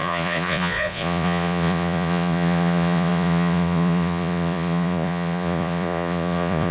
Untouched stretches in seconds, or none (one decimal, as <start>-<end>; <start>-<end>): none